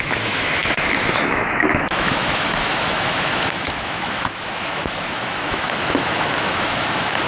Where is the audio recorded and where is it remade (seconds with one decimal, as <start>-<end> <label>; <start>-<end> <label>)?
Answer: 0.0-7.3 remade